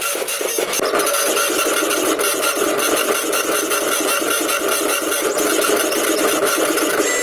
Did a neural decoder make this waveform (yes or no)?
no